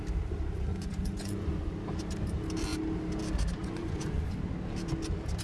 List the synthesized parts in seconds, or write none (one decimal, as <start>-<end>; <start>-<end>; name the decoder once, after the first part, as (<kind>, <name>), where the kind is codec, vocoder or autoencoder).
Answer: 0.7-1.7 (vocoder, Vocos); 3.6-4.5